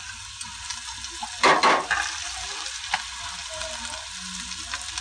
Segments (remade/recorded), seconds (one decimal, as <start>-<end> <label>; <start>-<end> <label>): 0.0-5.0 recorded